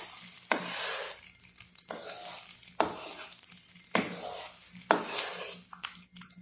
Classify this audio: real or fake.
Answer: real